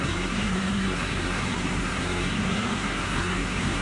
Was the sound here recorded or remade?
remade